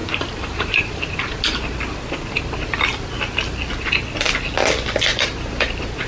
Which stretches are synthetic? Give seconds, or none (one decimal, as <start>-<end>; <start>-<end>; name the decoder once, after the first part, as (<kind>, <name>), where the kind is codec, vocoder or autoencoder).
0.0-1.3 (vocoder, BigVGAN v2); 5.1-6.1